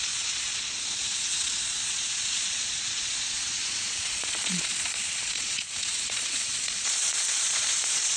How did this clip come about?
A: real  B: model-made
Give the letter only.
B